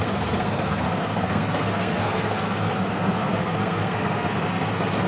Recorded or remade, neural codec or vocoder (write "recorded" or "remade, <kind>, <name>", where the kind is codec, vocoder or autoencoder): remade, codec, SNAC